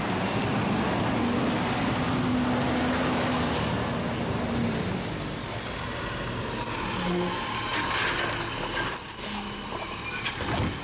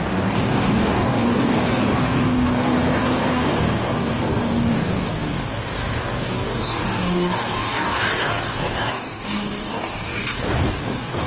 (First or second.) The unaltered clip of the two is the first